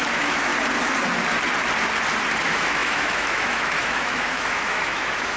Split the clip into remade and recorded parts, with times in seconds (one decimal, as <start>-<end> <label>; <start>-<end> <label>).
0.0-0.5 remade; 0.5-2.4 recorded; 2.4-5.4 remade